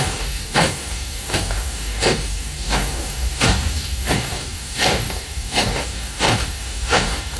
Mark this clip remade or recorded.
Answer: remade